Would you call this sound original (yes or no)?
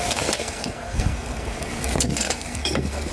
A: no